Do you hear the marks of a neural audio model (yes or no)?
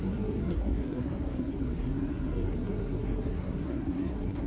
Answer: yes